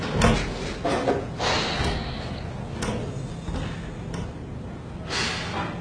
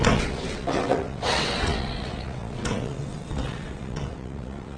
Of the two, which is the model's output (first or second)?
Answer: second